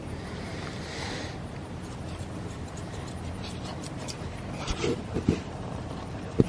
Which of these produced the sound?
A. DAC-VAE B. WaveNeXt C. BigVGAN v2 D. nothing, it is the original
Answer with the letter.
C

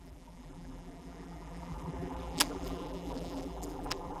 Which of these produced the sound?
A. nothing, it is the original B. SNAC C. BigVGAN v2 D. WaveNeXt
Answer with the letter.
C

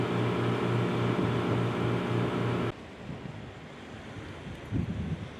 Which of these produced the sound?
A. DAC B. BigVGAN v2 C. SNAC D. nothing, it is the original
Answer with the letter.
D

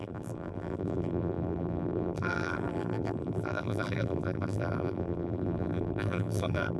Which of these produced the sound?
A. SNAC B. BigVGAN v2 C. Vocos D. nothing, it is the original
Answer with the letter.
B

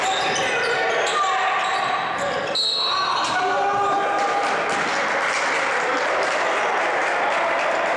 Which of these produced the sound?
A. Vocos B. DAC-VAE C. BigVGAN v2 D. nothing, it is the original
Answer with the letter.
D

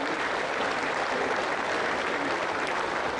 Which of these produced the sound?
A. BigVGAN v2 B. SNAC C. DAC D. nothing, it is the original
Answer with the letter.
D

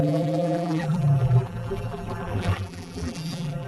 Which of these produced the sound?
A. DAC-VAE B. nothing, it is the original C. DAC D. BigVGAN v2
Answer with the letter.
D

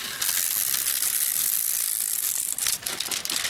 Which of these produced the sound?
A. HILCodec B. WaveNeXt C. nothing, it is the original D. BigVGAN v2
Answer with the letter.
C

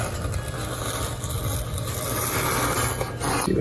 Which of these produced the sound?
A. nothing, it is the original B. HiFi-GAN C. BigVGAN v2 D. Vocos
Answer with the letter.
A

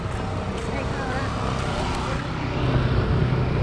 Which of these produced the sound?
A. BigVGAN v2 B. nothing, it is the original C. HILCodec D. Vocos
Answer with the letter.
B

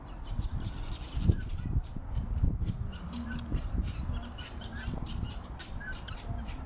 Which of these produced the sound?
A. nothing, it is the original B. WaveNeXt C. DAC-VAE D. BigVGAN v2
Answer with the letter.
D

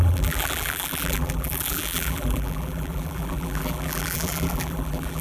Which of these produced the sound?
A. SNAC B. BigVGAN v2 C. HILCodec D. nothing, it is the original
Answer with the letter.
B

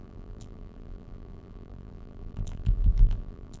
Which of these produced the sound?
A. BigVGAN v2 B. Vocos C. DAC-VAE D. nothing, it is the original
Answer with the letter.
A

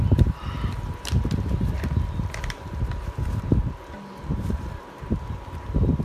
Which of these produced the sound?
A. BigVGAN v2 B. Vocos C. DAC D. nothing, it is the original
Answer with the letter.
A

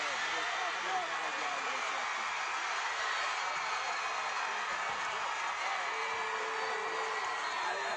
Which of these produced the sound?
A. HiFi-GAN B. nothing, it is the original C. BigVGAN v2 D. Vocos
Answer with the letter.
B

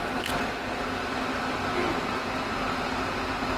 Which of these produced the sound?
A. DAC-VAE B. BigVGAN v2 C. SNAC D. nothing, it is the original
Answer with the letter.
D